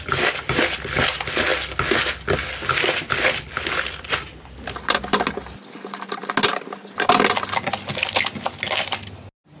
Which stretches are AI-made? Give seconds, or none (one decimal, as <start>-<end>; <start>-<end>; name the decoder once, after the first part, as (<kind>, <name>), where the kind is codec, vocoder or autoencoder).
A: none